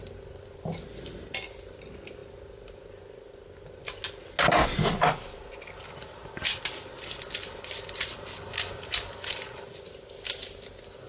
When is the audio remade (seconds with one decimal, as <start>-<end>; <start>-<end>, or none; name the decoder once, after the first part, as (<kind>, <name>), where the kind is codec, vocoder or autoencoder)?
none